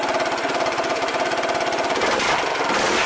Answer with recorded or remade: recorded